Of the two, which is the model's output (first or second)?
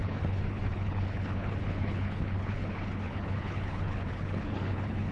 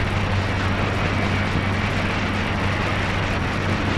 first